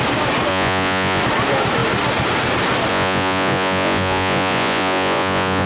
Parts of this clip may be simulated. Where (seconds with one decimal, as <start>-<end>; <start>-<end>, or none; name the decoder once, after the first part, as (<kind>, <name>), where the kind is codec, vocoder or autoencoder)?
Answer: 0.5-1.2 (vocoder, Vocos); 2.9-5.7